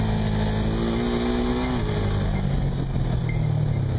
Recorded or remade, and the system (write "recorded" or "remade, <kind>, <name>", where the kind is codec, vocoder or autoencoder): recorded